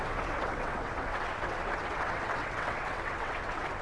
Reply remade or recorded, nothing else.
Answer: remade